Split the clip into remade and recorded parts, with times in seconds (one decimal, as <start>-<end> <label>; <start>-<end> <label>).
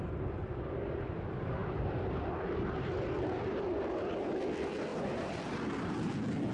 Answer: 0.0-6.5 remade